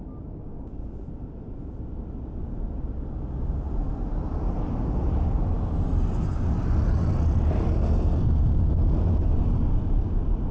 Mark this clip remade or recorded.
recorded